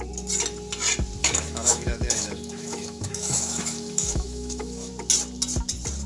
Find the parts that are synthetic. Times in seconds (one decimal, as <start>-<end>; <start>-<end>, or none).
1.2-4.9